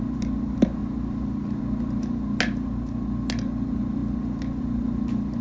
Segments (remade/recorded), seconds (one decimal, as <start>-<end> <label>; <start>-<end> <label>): 0.0-5.4 recorded